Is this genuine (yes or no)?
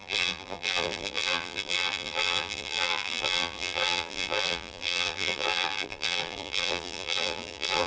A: no